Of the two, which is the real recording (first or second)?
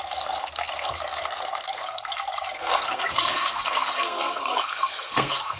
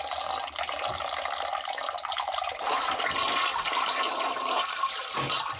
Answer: second